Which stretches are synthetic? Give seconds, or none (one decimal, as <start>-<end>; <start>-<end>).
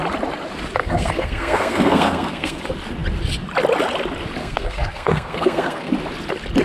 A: 0.8-2.6; 4.4-5.9